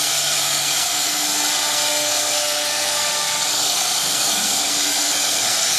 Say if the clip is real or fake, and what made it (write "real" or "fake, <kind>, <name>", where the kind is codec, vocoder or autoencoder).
fake, codec, SNAC